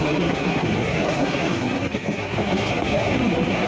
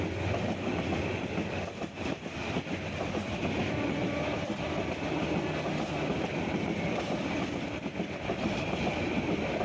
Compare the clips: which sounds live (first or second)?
second